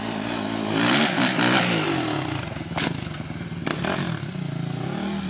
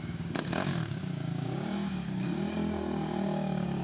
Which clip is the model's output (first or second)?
second